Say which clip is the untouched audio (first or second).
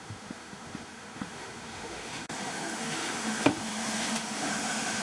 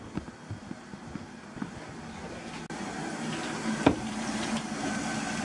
second